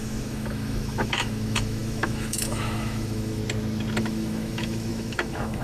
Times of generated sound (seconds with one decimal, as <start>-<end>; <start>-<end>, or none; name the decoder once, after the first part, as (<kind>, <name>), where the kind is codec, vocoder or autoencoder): 0.0-3.4 (autoencoder, DAC-VAE); 4.0-5.6